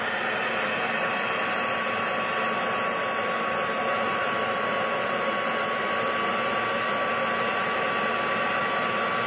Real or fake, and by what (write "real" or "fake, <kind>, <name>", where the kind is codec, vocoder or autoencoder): real